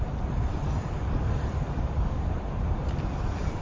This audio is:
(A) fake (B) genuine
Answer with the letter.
A